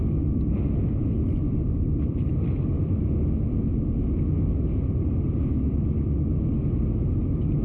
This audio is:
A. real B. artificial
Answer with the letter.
A